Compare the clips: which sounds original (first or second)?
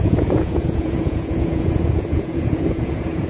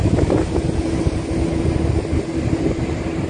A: second